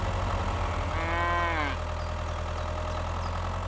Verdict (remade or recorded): recorded